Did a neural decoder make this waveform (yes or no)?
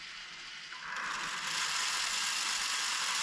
no